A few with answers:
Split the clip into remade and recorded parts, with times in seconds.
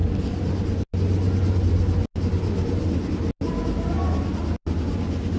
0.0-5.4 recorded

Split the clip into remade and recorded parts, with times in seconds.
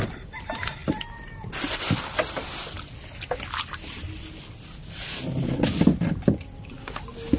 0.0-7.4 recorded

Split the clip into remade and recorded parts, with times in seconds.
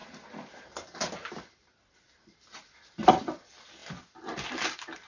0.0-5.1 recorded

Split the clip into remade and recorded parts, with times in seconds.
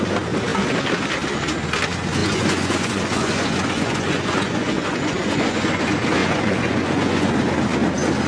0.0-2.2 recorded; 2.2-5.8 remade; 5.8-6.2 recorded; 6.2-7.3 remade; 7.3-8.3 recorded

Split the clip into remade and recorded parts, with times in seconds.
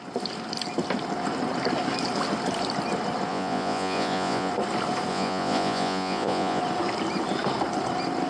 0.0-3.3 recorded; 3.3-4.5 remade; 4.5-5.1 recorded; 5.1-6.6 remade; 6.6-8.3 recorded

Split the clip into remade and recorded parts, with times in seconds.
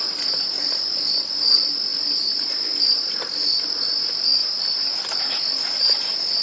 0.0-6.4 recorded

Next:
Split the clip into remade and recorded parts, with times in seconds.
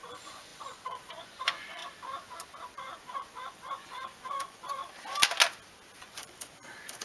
0.0-1.8 remade; 1.8-2.7 recorded; 2.7-4.8 remade; 4.8-6.0 recorded; 6.0-7.0 remade